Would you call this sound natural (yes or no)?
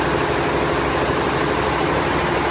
yes